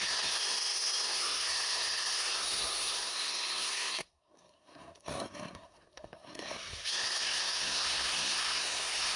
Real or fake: fake